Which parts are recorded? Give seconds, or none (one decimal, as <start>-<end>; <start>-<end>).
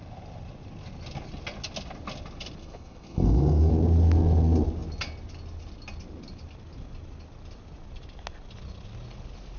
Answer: 0.0-2.6; 3.7-9.6